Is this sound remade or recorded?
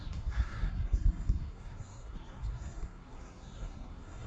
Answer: remade